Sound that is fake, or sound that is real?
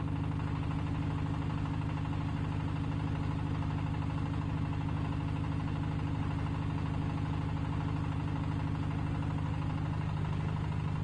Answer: real